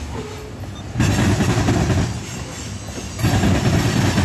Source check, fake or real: real